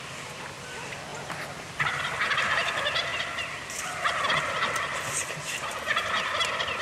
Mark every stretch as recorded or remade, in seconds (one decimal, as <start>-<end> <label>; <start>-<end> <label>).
0.0-6.8 recorded